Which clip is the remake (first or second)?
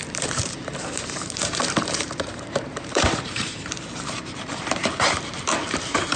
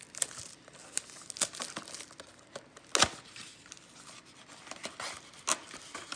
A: first